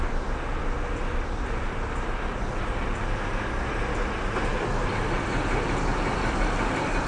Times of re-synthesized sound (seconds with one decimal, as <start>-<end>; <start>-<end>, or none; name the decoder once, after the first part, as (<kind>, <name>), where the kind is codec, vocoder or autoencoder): none